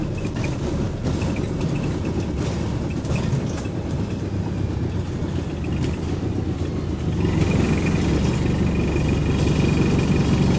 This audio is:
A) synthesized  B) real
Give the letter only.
B